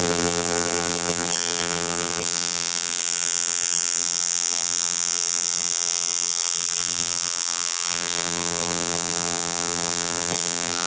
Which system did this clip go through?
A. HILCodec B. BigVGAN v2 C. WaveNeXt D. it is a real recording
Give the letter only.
B